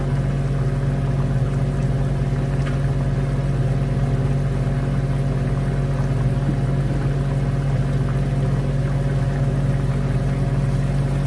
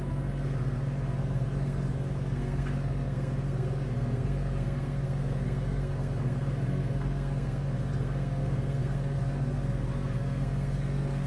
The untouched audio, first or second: first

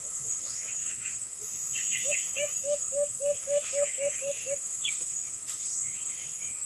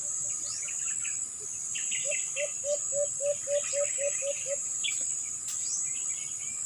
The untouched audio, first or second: second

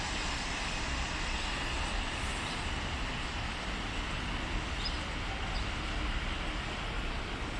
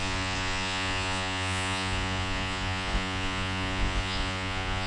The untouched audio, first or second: first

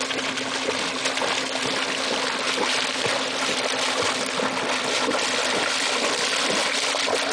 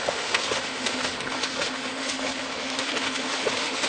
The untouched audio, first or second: first